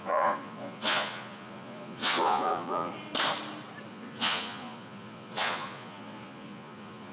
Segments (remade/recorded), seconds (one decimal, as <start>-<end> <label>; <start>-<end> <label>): 0.0-2.9 remade; 2.9-3.9 recorded; 3.9-7.1 remade